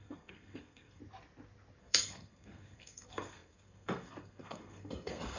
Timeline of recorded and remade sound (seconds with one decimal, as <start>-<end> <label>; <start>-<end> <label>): 0.0-1.0 remade; 1.0-1.8 recorded; 1.8-5.4 remade